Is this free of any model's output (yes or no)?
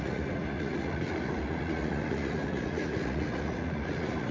no